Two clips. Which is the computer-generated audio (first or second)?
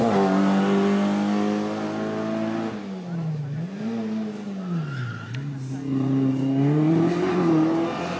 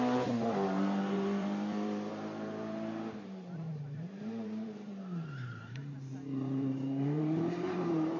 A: second